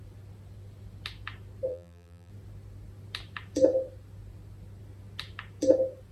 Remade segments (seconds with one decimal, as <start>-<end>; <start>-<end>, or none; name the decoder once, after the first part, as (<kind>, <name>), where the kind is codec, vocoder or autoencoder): 1.7-2.3 (vocoder, BigVGAN v2)